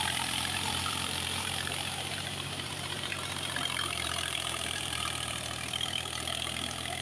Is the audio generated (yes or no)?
yes